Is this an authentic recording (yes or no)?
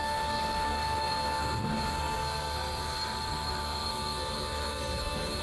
no